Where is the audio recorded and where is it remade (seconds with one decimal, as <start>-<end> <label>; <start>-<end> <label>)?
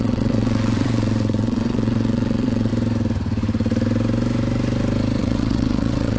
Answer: 0.0-2.7 remade; 2.7-5.2 recorded; 5.2-6.2 remade